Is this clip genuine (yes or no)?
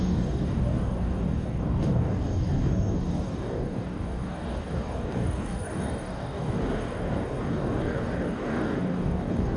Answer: no